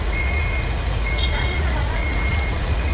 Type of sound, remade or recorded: remade